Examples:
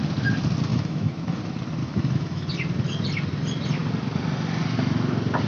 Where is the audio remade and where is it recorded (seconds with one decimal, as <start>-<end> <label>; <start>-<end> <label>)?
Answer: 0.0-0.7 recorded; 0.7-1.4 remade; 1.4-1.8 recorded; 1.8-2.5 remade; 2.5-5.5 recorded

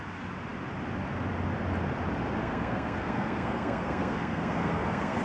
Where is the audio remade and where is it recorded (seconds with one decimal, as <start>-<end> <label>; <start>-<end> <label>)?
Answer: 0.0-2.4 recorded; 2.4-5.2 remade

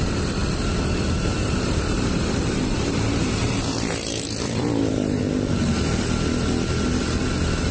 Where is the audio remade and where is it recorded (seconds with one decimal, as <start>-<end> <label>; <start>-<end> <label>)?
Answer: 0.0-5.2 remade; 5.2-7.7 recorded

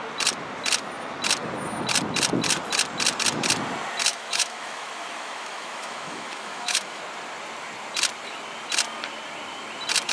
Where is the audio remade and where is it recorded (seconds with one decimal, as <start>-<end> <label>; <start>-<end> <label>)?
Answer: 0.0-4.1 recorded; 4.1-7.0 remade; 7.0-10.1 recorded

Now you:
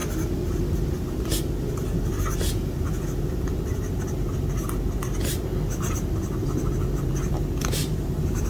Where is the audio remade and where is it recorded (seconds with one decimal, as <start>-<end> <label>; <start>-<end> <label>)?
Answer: 0.0-8.5 remade

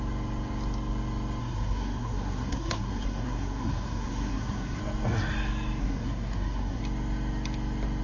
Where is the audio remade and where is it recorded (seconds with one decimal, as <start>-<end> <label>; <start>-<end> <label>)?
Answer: 0.0-1.4 recorded; 1.4-4.8 remade; 4.8-5.8 recorded; 5.8-6.8 remade; 6.8-8.0 recorded

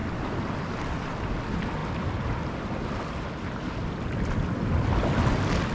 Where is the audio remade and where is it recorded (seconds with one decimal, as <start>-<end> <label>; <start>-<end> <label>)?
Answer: 0.0-5.7 recorded

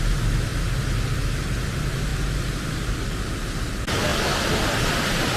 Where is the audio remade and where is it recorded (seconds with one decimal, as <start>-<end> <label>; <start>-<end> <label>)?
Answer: 0.0-4.1 recorded; 4.1-4.6 remade; 4.6-5.4 recorded